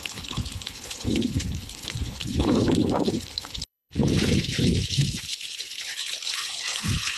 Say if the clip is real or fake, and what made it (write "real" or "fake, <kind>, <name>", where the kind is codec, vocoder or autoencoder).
fake, codec, HILCodec